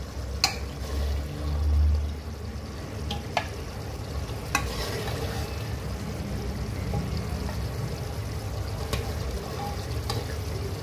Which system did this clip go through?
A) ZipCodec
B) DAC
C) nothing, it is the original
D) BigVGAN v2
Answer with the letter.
C